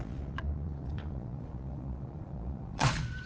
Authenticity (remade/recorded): remade